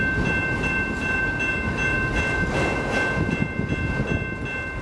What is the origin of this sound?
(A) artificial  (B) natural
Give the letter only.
B